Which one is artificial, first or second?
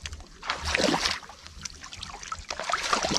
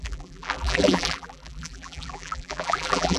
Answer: second